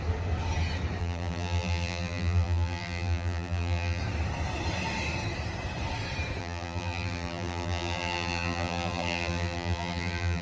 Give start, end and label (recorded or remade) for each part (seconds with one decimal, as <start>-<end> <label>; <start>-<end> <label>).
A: 0.0-1.0 recorded; 1.0-4.0 remade; 4.0-6.4 recorded; 6.4-10.4 remade